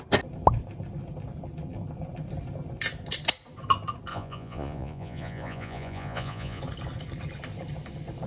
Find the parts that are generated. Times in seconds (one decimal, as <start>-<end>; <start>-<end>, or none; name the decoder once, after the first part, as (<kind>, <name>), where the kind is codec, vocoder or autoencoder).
4.1-6.6 (vocoder, Vocos)